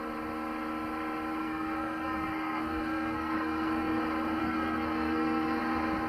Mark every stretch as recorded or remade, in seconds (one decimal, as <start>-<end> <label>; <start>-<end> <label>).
0.0-1.4 recorded; 1.4-4.0 remade; 4.0-4.4 recorded; 4.4-5.6 remade; 5.6-6.1 recorded